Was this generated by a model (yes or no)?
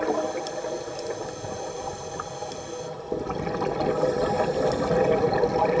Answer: no